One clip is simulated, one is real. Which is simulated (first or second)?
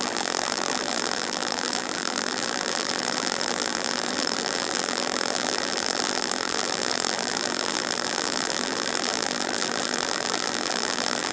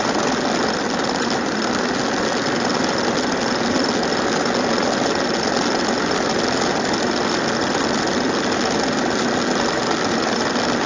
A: first